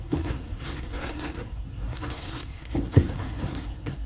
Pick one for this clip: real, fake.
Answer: fake